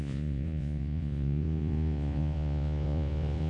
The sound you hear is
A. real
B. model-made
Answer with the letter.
B